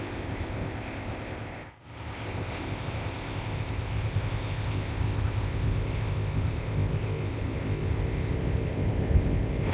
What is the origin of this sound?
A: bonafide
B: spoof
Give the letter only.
B